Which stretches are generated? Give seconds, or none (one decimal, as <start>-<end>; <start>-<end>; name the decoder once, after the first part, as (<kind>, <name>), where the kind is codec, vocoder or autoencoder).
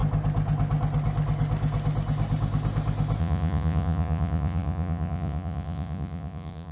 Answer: 3.2-6.7 (vocoder, Vocos)